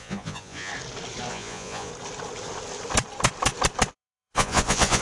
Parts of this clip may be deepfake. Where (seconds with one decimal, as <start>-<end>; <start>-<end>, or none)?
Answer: 0.0-0.7; 1.3-1.9; 3.9-5.0